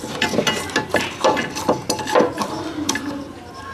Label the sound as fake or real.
real